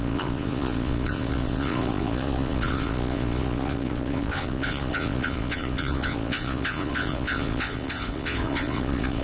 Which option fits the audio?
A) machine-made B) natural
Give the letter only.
A